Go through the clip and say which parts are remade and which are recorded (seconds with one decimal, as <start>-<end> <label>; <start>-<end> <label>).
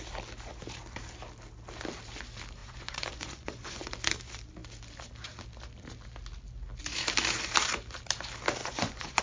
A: 0.0-2.6 recorded; 2.6-3.8 remade; 3.8-8.6 recorded; 8.6-9.2 remade